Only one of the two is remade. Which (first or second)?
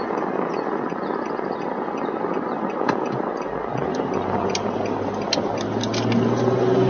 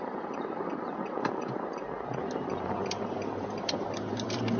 second